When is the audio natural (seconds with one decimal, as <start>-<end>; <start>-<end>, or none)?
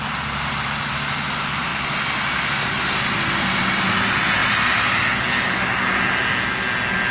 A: 0.0-7.1